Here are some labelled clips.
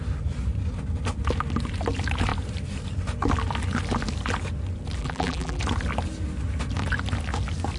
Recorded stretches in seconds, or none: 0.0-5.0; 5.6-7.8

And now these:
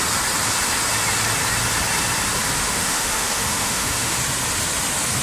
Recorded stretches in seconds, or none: 0.0-2.6; 4.2-5.2